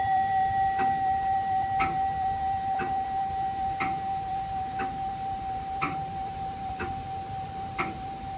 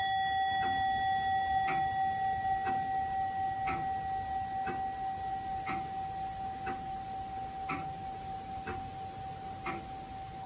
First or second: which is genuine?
second